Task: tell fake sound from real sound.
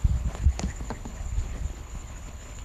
fake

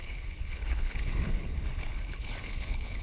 fake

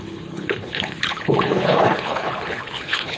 fake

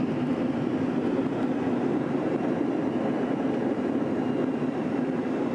real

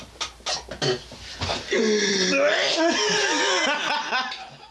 real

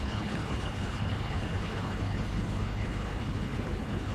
fake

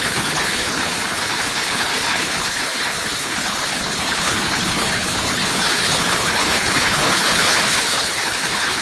fake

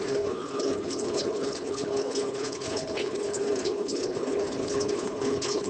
fake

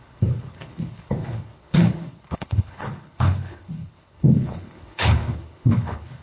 fake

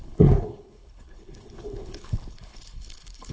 fake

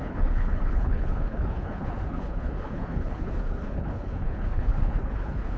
fake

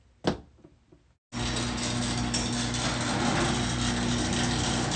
real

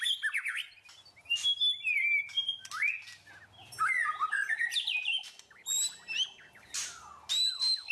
real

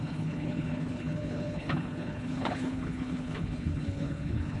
fake